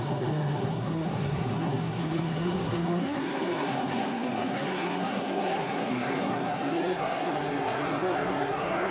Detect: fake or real fake